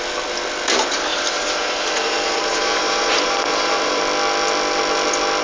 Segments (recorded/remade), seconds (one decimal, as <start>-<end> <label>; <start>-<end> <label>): 0.0-1.1 recorded; 1.1-4.0 remade; 4.0-5.4 recorded